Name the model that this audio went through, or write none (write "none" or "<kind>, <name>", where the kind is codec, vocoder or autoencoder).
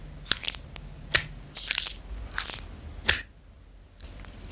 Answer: none